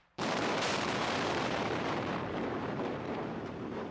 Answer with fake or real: fake